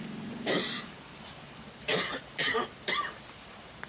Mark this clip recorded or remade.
remade